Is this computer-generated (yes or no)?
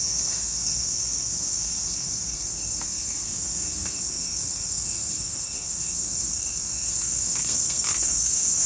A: yes